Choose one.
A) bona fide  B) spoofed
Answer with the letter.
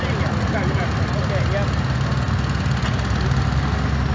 A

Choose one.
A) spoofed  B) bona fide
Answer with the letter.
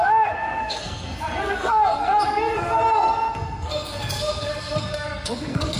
A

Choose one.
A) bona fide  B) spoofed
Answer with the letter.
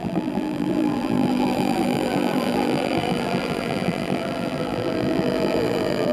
B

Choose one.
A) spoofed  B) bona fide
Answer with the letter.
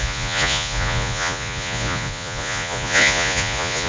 A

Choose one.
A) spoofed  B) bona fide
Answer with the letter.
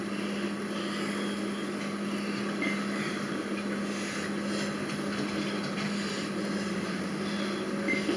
B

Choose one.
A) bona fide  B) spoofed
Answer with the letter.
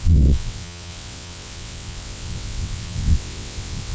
B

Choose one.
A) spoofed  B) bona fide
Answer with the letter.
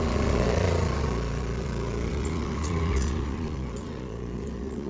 A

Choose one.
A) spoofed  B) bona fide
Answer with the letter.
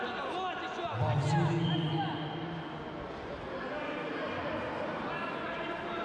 B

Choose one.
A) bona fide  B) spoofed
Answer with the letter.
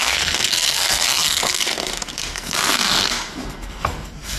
B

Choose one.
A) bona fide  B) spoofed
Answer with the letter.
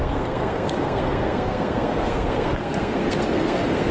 B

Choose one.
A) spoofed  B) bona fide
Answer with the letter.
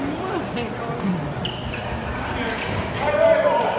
B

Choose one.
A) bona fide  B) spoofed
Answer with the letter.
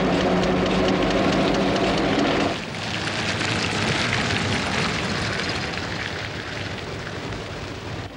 A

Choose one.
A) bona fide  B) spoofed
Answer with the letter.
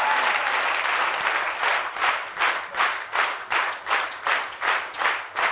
A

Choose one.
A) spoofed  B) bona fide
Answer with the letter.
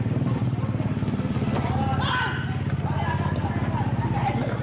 B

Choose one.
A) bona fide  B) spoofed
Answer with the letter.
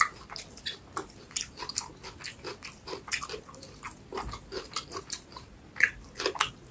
A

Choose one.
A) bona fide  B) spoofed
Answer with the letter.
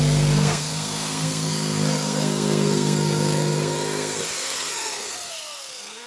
B